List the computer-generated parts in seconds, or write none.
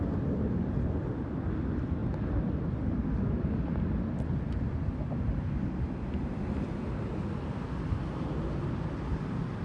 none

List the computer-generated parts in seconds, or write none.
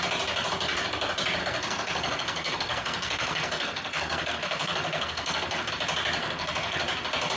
1.4-5.7 (codec, SNAC); 6.2-6.8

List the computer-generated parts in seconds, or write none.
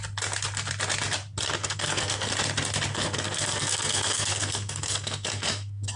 1.6-2.3 (codec, SNAC); 2.9-6.0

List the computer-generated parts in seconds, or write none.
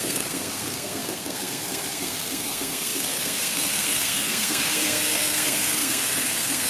0.0-6.7 (codec, SNAC)